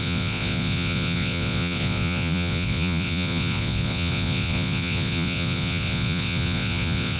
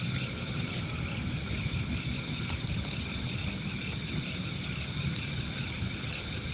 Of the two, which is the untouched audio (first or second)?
second